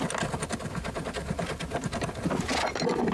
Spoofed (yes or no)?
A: no